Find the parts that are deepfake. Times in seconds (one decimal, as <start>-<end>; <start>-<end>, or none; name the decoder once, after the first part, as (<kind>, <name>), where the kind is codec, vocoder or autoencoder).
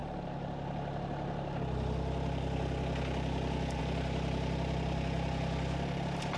none